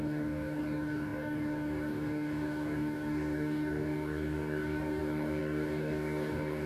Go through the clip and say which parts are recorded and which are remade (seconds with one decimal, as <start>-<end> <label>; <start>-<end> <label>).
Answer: 0.0-6.7 remade